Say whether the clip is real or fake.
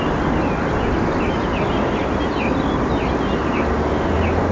real